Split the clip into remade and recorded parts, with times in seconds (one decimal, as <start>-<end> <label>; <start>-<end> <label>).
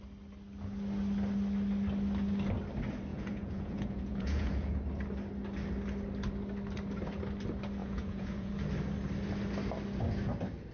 0.0-3.1 recorded; 3.1-4.8 remade; 4.8-7.8 recorded; 7.8-8.5 remade; 8.5-10.7 recorded